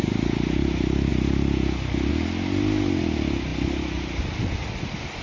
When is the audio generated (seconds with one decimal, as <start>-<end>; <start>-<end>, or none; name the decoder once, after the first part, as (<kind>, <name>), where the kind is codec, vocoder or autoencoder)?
none

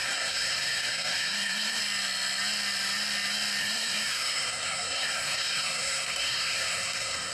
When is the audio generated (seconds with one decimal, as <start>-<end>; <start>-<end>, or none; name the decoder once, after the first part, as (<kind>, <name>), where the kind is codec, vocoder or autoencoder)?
0.0-1.8 (codec, SNAC); 3.6-7.3